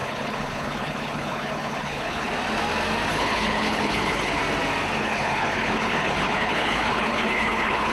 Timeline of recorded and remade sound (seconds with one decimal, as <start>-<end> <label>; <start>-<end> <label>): 0.0-2.3 remade; 2.3-3.1 recorded; 3.1-4.4 remade; 4.4-5.0 recorded; 5.0-7.9 remade

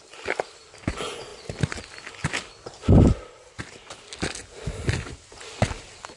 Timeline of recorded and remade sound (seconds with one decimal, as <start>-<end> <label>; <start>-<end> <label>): 0.0-6.2 recorded

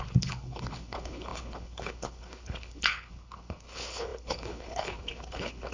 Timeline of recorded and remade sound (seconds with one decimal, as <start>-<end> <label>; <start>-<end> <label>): 0.0-5.7 remade

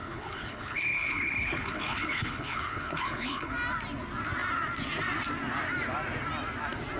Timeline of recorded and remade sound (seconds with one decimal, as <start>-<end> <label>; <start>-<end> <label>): 0.0-3.5 remade; 3.5-7.0 recorded

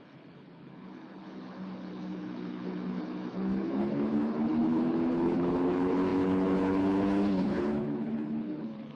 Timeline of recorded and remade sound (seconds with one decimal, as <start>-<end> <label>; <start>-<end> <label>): 0.0-8.9 remade

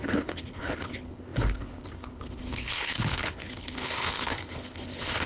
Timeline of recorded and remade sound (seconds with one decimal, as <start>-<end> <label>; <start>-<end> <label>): 0.0-5.3 remade